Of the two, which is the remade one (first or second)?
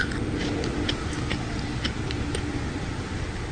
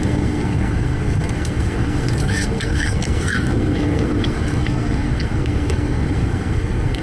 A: second